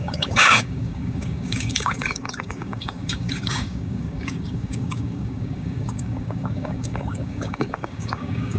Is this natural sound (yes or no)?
no